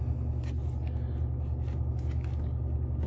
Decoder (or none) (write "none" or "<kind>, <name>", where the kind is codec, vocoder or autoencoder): none